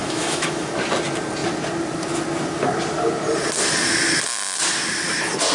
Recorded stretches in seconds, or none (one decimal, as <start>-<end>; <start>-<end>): 0.7-5.5